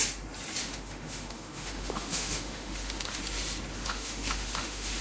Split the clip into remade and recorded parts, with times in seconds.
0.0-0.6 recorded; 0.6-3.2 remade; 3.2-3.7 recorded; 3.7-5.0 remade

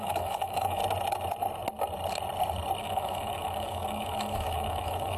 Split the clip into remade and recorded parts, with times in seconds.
0.0-0.8 remade; 0.8-2.8 recorded; 2.8-5.2 remade

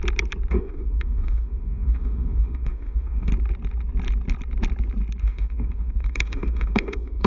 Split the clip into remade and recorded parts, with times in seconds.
0.0-0.5 recorded; 0.5-3.3 remade; 3.3-5.2 recorded; 5.2-7.3 remade

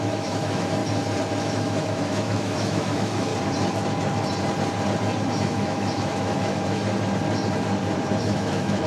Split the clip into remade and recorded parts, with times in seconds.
0.0-0.8 remade; 0.8-1.4 recorded; 1.4-3.3 remade; 3.3-5.4 recorded; 5.4-6.8 remade; 6.8-8.2 recorded; 8.2-8.9 remade